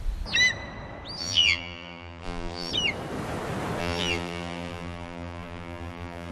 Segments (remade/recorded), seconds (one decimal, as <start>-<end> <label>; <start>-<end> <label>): 0.0-1.2 recorded; 1.2-2.7 remade; 2.7-3.8 recorded; 3.8-6.3 remade